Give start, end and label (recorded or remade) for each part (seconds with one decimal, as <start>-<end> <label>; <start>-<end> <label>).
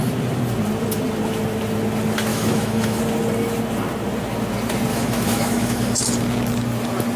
0.0-2.3 recorded; 2.3-3.0 remade; 3.0-4.9 recorded; 4.9-6.0 remade; 6.0-7.2 recorded